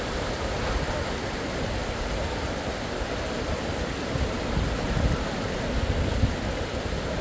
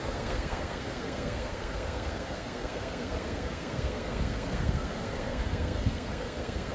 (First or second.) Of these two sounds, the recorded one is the first